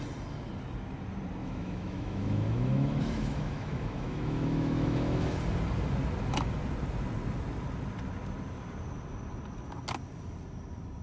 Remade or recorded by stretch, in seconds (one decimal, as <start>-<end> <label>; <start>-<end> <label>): 0.0-1.4 recorded; 1.4-5.4 remade; 5.4-11.0 recorded